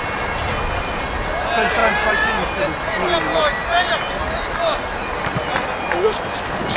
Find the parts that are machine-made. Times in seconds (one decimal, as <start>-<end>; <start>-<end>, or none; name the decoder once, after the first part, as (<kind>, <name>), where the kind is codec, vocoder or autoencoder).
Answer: none